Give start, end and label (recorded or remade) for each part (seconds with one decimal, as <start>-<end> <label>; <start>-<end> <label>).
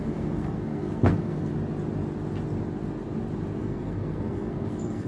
0.0-1.5 remade; 1.5-3.6 recorded; 3.6-5.1 remade